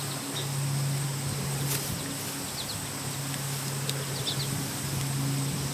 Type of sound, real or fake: real